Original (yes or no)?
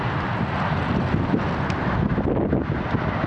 yes